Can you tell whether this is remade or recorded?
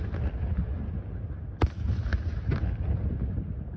recorded